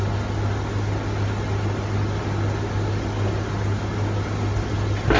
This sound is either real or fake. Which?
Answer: real